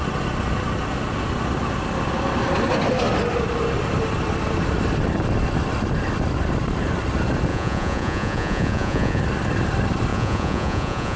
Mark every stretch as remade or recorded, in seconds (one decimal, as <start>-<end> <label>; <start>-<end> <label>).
0.0-7.5 recorded; 7.5-9.2 remade; 9.2-10.1 recorded; 10.1-11.2 remade